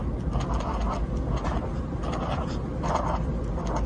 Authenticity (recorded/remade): recorded